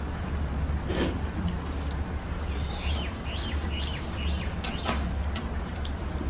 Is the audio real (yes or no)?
yes